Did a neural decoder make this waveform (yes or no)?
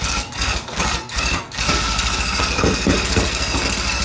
yes